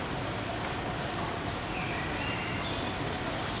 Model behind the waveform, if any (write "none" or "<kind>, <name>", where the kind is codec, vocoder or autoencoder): none